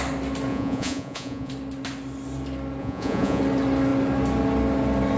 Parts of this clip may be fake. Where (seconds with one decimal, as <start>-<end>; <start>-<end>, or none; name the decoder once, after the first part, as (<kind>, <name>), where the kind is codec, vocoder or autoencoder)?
0.5-1.5 (vocoder, Vocos); 2.8-3.4